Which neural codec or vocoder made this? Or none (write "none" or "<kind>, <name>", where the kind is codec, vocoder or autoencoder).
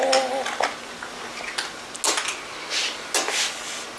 none